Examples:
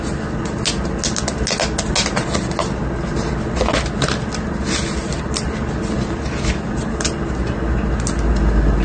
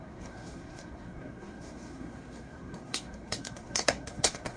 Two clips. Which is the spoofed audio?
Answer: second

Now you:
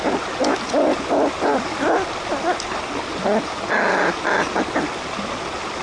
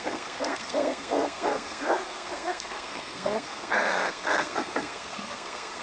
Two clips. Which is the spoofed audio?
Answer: second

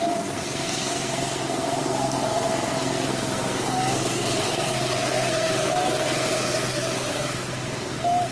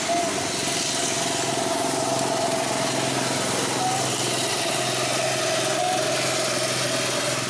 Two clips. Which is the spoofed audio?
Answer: first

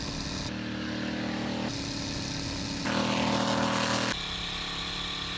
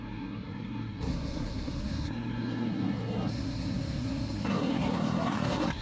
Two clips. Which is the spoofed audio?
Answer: second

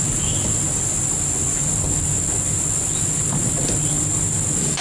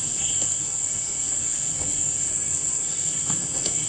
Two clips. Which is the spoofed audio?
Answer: second